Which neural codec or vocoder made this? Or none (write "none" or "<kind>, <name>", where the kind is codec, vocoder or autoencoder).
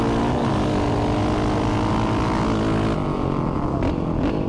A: none